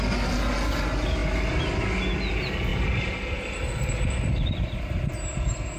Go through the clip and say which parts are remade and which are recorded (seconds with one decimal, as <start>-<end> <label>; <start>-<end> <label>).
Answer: 0.0-5.8 recorded